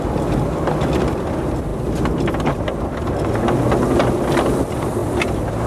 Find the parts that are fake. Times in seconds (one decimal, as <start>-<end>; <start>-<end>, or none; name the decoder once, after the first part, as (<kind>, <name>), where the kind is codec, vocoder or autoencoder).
5.0-5.7 (vocoder, BigVGAN v2)